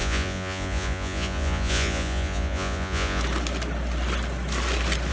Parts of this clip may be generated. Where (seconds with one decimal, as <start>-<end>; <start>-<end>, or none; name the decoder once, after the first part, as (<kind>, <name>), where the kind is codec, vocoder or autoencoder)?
0.0-3.2 (vocoder, Vocos)